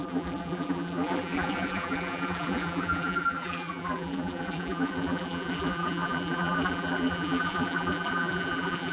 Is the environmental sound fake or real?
fake